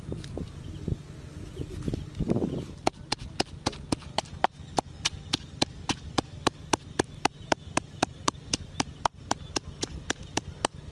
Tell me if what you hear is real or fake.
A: real